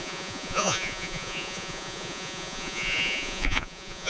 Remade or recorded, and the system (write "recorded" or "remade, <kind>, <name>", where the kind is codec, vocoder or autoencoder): remade, vocoder, Vocos